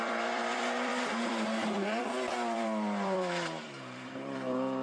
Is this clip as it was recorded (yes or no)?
no